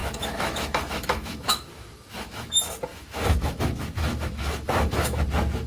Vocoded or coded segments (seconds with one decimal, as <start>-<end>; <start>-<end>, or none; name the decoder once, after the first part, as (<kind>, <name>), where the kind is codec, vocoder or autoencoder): 0.0-2.5 (autoencoder, DAC-VAE); 2.9-5.2